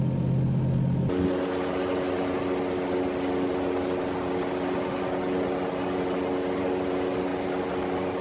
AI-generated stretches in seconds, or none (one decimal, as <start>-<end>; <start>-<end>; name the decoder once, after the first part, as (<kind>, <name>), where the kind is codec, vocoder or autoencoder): none